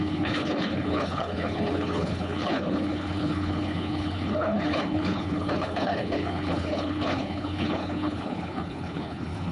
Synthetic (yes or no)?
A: yes